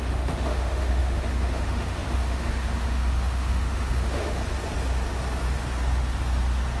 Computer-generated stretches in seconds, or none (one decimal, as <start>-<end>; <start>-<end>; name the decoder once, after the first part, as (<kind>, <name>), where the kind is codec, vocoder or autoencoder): 0.0-4.4 (autoencoder, DAC-VAE)